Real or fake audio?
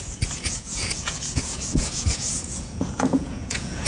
fake